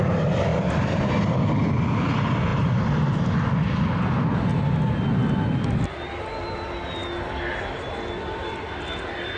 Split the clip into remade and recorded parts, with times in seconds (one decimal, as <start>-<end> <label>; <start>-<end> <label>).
0.0-9.4 recorded